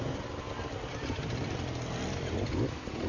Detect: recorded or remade recorded